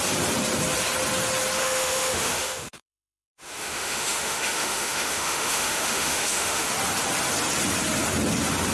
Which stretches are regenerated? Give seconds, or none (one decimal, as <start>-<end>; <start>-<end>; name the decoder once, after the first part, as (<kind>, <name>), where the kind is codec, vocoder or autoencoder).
1.6-6.7 (autoencoder, DAC-VAE)